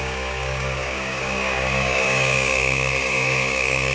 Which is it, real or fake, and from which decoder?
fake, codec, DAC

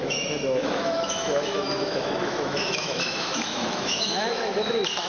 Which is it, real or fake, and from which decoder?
fake, autoencoder, DAC-VAE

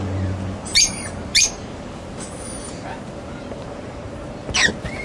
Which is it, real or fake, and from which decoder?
fake, vocoder, BigVGAN v2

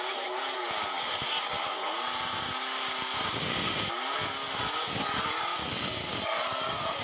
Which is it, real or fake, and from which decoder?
real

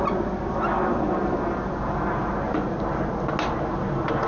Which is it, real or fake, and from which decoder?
real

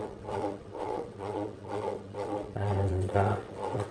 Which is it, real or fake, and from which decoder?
fake, vocoder, WaveNeXt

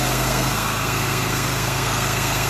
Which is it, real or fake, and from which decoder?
fake, codec, SNAC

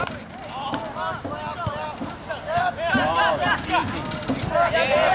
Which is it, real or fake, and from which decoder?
real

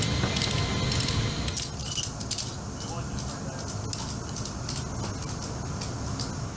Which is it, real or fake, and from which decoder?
real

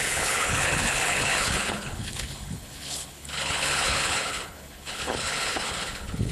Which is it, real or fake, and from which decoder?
fake, codec, HILCodec